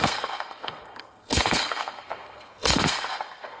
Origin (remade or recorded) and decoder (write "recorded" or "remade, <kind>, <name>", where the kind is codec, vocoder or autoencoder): remade, codec, SNAC